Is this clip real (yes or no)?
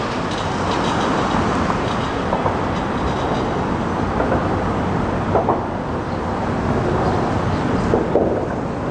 yes